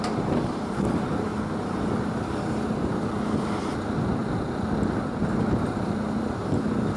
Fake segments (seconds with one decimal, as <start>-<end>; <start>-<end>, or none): 0.0-1.3; 2.0-4.2; 4.9-7.0